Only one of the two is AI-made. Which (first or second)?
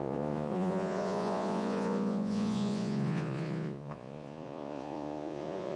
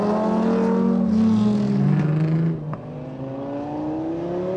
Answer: first